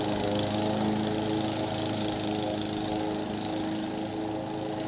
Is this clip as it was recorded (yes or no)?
yes